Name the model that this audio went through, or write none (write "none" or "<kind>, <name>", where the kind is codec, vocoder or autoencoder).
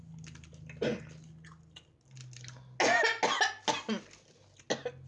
none